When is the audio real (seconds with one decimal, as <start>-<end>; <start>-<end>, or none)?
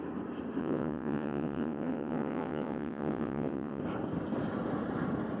0.0-0.6; 3.8-5.4